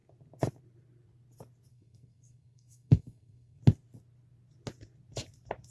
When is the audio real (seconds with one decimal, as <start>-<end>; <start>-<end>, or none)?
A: 0.0-1.7; 3.6-5.7